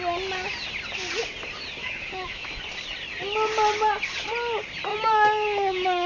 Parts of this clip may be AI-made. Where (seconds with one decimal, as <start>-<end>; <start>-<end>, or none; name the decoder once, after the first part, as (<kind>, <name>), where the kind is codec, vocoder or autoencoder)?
1.8-2.6 (autoencoder, DAC-VAE); 4.9-6.1